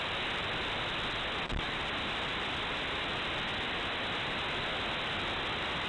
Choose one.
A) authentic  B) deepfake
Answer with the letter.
A